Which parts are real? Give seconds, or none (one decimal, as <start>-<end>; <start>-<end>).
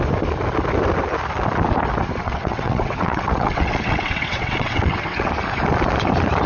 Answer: 0.0-2.2; 5.3-6.5